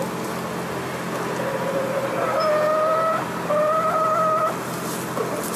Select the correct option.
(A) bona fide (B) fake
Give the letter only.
A